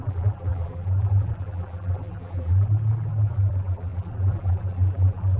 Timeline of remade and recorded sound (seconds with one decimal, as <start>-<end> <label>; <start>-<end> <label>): 0.0-5.4 remade

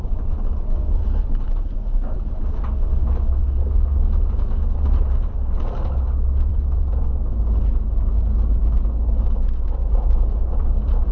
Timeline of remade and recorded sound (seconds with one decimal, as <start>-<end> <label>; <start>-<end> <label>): 0.0-6.5 recorded; 6.5-7.0 remade; 7.0-9.8 recorded; 9.8-10.4 remade; 10.4-11.1 recorded

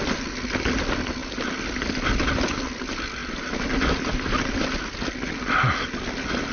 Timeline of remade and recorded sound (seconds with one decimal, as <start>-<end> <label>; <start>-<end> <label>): 0.0-6.5 recorded

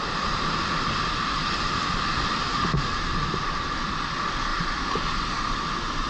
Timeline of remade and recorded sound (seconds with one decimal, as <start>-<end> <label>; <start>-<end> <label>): 0.0-2.9 recorded; 2.9-3.8 remade; 3.8-4.5 recorded; 4.5-5.3 remade; 5.3-6.1 recorded

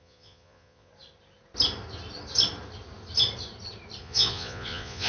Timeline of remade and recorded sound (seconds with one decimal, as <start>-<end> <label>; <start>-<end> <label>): 0.0-0.9 remade; 0.9-4.0 recorded; 4.0-5.1 remade

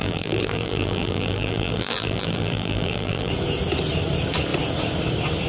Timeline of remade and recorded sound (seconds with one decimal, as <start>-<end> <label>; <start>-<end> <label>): 0.0-3.3 remade; 3.3-5.5 recorded